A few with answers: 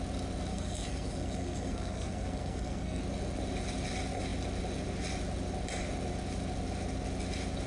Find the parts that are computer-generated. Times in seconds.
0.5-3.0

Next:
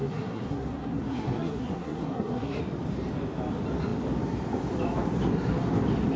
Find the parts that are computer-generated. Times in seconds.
0.0-2.6

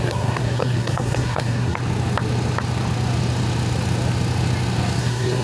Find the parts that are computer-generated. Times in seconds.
0.0-1.8; 5.0-5.4